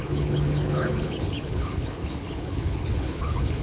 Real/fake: fake